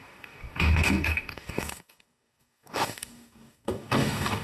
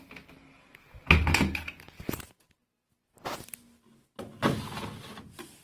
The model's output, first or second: first